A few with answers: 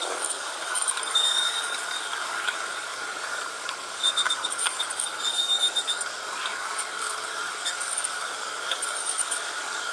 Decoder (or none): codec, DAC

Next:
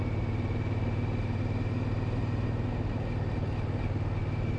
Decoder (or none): none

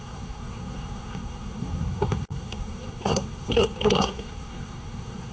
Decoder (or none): codec, SNAC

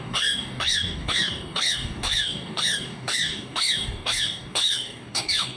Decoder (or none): codec, DAC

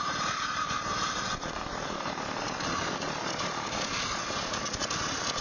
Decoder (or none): none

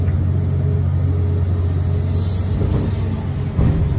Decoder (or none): none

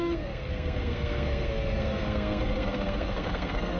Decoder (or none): codec, SNAC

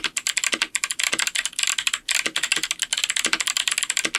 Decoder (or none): none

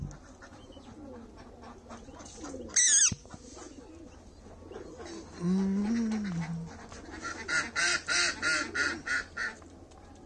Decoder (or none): none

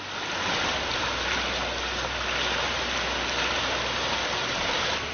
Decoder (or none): none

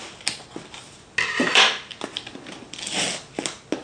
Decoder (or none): none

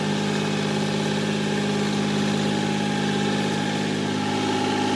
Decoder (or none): none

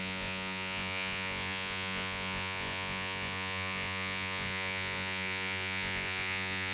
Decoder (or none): vocoder, Vocos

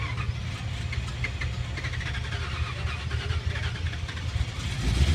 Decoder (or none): none